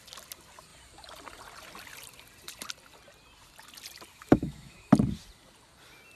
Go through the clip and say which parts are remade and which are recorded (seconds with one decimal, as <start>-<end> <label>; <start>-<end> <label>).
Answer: 0.0-4.1 recorded; 4.1-4.9 remade; 4.9-6.2 recorded